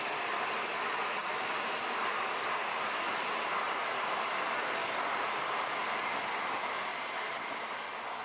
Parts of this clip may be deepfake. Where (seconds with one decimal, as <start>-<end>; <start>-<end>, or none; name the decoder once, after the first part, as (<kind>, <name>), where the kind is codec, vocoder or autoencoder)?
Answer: 1.2-3.0 (vocoder, BigVGAN v2); 6.9-7.7